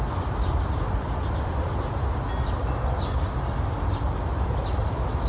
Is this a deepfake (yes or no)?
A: no